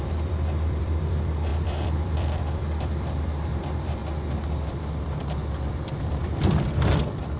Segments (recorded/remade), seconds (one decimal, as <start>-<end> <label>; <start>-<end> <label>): 0.0-4.0 remade; 4.0-4.7 recorded; 4.7-7.4 remade